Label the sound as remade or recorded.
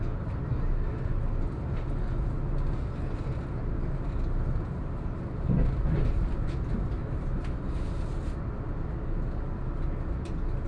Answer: recorded